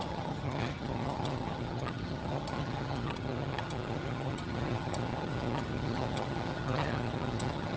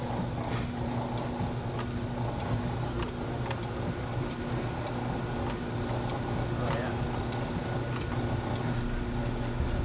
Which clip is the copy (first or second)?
first